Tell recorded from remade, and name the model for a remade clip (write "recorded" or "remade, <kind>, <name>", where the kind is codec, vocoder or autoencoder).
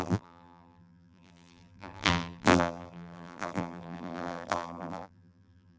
remade, vocoder, BigVGAN v2